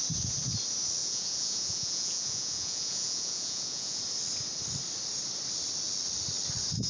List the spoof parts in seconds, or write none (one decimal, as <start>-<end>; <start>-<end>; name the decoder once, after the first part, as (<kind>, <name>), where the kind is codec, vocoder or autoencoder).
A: 1.0-4.0 (vocoder, Vocos)